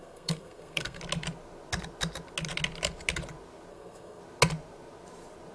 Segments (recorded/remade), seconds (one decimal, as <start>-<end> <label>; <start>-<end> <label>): 0.0-1.0 remade; 1.0-3.7 recorded; 3.7-4.2 remade; 4.2-5.5 recorded